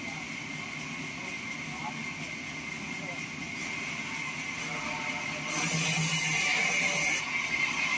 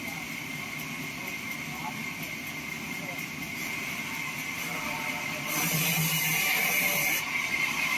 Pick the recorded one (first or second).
first